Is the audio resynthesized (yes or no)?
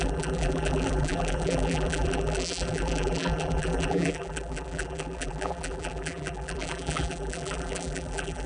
yes